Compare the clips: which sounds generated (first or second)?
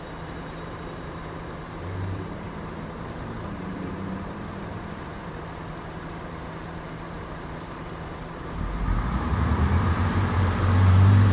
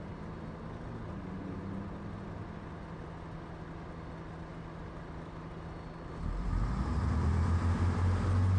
first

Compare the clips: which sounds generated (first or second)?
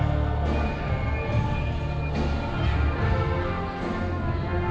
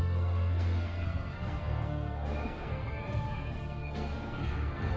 second